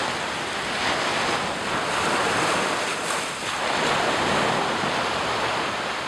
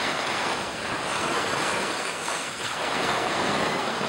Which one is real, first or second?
first